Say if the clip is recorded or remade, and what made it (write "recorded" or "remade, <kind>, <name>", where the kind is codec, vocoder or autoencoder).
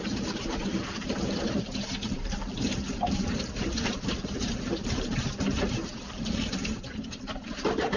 remade, vocoder, BigVGAN v2